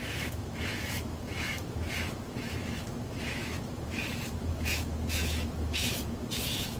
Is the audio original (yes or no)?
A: no